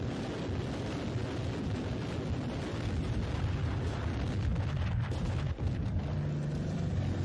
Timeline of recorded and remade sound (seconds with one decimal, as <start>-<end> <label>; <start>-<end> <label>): 0.0-7.2 recorded